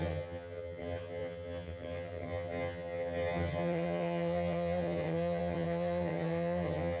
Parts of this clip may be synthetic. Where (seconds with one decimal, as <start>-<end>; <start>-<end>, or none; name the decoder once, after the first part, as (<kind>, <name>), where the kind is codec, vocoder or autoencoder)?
0.0-7.0 (vocoder, HiFi-GAN)